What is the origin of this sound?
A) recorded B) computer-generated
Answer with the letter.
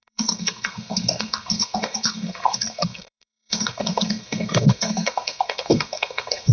B